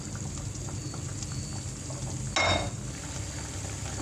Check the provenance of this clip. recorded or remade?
recorded